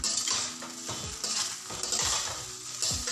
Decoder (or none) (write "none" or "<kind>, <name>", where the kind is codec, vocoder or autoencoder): none